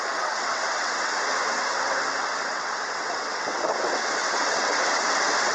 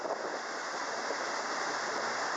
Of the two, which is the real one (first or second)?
second